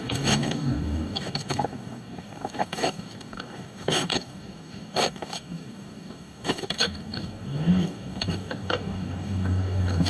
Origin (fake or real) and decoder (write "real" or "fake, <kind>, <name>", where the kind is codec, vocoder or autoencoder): fake, codec, DAC